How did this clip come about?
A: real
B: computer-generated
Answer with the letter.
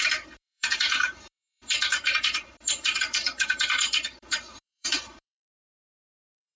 B